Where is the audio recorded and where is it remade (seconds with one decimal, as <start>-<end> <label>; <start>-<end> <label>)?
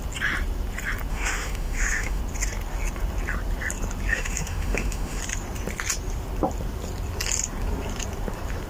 0.0-1.1 recorded; 1.1-2.2 remade; 2.2-4.1 recorded; 4.1-5.2 remade; 5.2-8.7 recorded